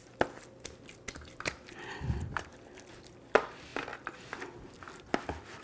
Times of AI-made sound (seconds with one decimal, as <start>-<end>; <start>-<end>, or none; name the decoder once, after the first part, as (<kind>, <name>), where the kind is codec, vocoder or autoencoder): none